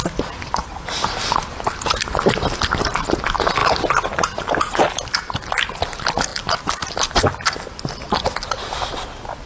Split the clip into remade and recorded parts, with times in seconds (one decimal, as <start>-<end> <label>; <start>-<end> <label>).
0.0-9.5 recorded